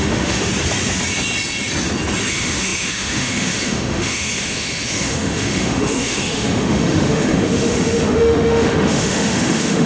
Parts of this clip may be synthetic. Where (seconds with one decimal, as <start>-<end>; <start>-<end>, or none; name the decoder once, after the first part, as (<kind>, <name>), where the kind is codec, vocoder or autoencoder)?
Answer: 0.0-0.5 (autoencoder, DAC-VAE); 2.3-9.9